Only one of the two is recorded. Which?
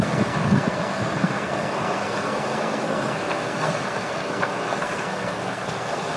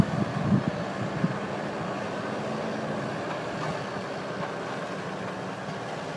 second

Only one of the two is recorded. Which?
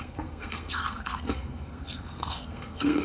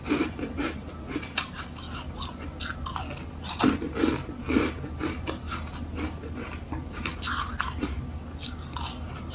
second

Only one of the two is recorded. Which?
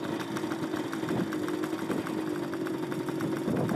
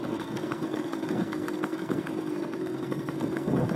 first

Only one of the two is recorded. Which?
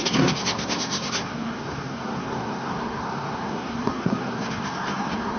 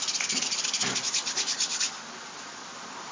second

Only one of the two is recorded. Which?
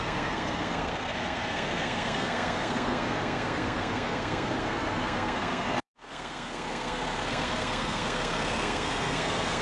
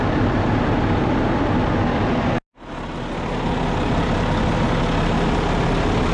second